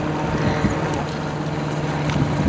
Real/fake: real